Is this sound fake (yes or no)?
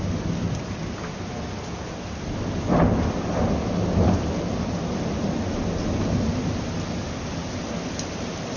no